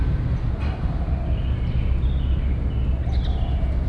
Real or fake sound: real